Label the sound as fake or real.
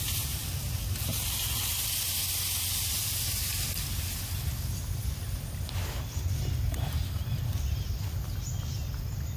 real